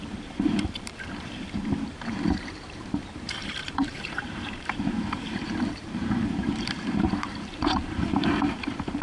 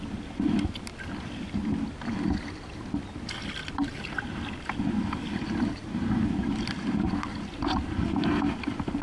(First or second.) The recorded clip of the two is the second